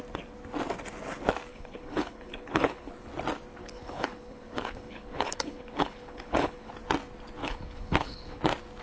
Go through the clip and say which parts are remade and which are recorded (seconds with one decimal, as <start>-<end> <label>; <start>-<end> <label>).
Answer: 0.0-1.5 recorded; 1.5-2.9 remade; 2.9-3.6 recorded; 3.6-6.7 remade; 6.7-7.4 recorded; 7.4-8.4 remade; 8.4-8.8 recorded